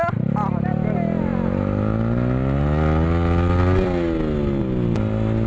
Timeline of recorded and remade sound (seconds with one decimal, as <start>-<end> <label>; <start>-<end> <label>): 0.0-5.5 recorded